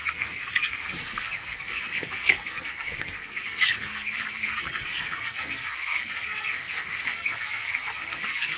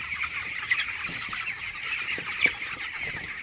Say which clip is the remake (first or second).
first